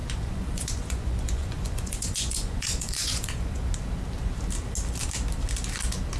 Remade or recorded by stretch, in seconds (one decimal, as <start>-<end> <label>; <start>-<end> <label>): 0.0-3.7 remade; 3.7-6.2 recorded